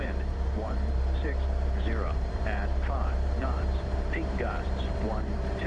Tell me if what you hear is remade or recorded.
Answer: remade